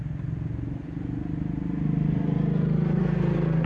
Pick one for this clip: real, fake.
real